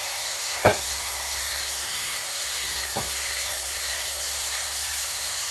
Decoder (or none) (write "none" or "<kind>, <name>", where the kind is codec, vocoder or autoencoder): codec, SNAC